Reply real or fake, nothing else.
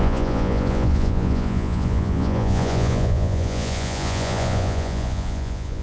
fake